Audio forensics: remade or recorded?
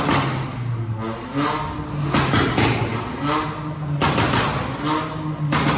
recorded